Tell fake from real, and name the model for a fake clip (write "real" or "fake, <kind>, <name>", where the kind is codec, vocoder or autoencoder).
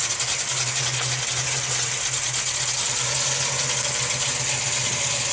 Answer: real